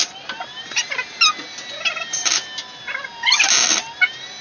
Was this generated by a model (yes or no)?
no